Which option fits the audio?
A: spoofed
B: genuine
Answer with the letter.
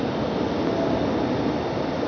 B